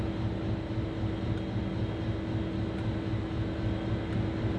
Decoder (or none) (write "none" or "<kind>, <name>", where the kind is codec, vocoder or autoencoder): none